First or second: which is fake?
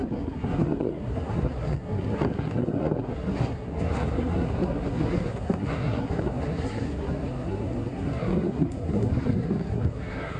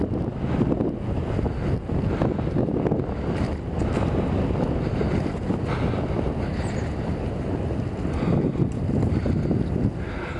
first